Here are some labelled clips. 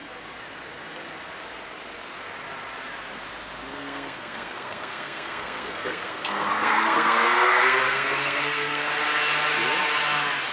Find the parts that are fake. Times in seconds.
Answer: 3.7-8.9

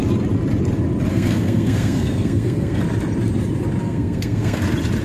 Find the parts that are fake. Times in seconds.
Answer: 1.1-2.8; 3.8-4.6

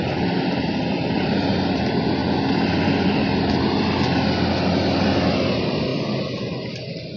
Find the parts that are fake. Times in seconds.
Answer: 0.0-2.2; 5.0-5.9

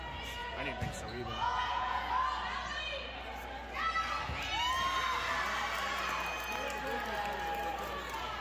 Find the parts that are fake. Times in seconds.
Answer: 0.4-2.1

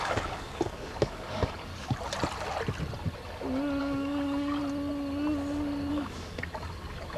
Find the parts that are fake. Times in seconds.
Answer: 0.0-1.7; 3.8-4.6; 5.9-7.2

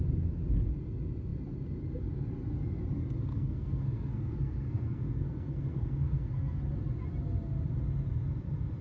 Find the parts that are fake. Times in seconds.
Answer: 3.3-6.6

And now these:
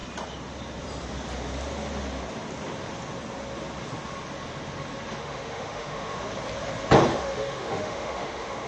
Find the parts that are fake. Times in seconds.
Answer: 5.2-6.2; 7.1-8.7